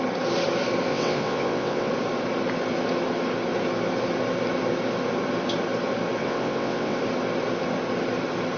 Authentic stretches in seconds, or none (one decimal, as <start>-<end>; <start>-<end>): 0.0-0.9; 1.9-6.2; 7.0-8.6